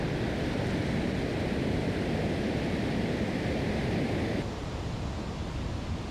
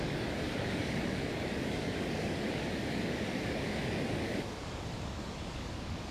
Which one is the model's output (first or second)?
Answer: second